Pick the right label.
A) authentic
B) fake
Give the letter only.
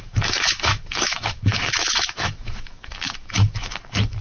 B